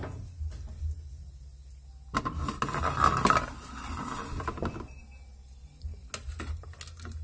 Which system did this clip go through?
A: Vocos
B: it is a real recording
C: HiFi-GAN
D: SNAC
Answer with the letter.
B